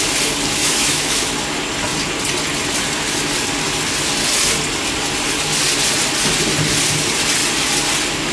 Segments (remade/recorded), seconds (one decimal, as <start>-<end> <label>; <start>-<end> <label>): 0.0-0.6 recorded; 0.6-1.3 remade; 1.3-8.3 recorded